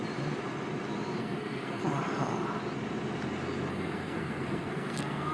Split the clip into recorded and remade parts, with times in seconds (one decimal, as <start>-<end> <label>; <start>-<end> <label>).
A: 0.0-1.2 recorded; 1.2-1.8 remade; 1.8-3.7 recorded; 3.7-5.3 remade